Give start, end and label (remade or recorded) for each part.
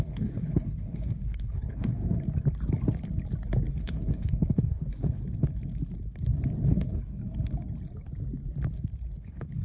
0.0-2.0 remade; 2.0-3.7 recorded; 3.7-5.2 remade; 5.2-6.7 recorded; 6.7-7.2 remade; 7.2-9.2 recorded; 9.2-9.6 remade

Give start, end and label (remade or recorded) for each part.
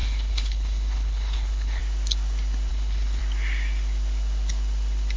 0.0-1.8 remade; 1.8-2.7 recorded; 2.7-3.2 remade; 3.2-5.2 recorded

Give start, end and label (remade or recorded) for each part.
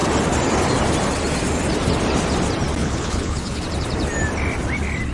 0.0-2.8 recorded; 2.8-3.6 remade; 3.6-5.1 recorded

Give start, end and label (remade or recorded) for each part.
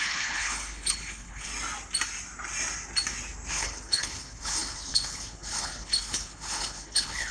0.0-1.5 remade; 1.5-3.5 recorded; 3.5-7.3 remade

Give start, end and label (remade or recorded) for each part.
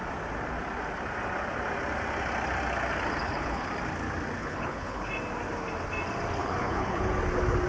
0.0-3.2 recorded; 3.2-3.7 remade; 3.7-4.4 recorded; 4.4-5.1 remade; 5.1-6.4 recorded; 6.4-7.1 remade; 7.1-7.7 recorded